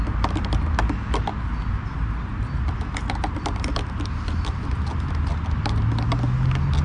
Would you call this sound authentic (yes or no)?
yes